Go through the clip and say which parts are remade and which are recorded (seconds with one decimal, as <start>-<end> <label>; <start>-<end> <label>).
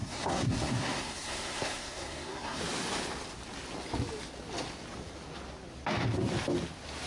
0.0-2.6 remade; 2.6-7.1 recorded